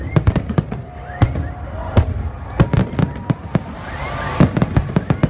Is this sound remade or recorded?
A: recorded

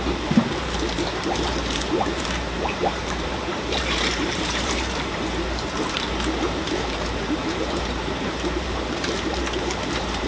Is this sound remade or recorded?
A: remade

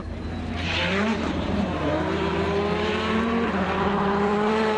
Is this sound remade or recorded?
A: remade